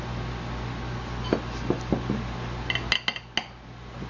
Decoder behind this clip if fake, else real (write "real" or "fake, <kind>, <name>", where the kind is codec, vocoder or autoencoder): real